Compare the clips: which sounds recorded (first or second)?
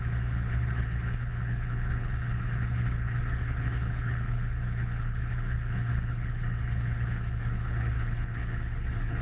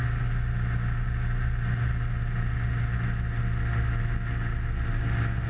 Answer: second